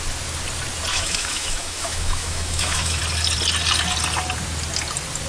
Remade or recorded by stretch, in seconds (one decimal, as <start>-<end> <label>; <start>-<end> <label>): 0.0-0.9 recorded; 0.9-3.0 remade; 3.0-5.3 recorded